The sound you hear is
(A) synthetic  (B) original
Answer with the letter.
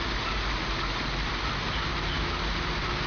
B